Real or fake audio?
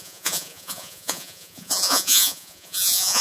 fake